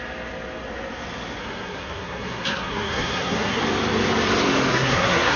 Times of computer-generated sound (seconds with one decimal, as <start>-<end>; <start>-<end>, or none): 1.4-3.6; 4.7-5.4